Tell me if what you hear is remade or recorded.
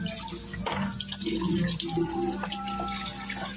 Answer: recorded